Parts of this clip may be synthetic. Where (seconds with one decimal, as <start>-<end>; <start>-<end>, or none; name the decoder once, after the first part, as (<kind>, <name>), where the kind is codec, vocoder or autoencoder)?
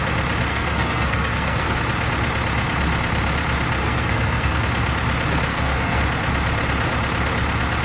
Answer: 0.5-1.8 (codec, SNAC); 3.8-4.6; 5.5-6.0